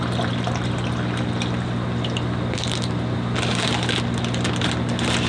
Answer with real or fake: real